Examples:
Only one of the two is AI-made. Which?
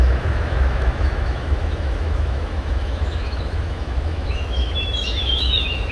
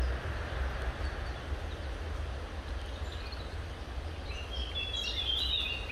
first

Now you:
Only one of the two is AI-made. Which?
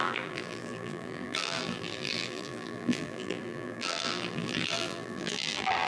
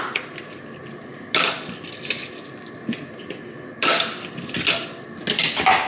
first